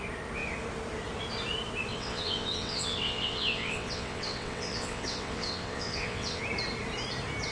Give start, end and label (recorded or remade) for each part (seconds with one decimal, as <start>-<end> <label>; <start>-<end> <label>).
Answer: 0.0-1.9 recorded; 1.9-6.4 remade; 6.4-7.5 recorded